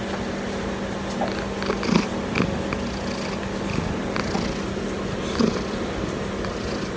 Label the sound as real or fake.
real